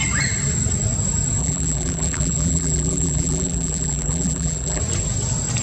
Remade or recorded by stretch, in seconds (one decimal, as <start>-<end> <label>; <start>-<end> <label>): 0.0-1.4 recorded; 1.4-4.8 remade; 4.8-5.6 recorded